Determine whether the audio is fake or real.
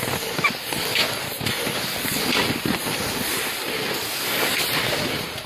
real